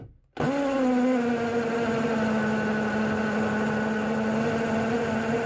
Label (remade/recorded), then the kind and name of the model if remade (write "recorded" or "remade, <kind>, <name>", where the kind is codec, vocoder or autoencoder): recorded